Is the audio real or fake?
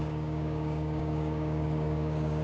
fake